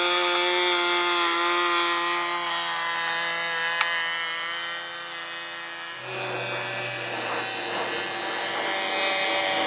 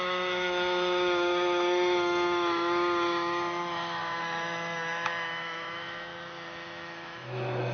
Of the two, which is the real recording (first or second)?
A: first